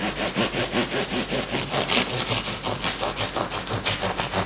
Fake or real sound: real